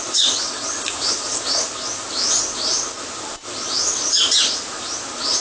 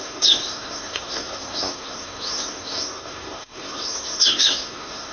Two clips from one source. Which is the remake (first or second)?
second